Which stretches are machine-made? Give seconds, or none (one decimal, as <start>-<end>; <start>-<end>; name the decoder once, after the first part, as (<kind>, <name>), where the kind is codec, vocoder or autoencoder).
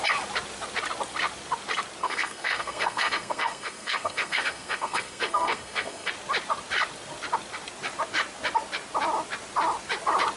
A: 2.0-6.1 (codec, SNAC)